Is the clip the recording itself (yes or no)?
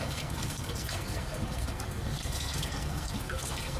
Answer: no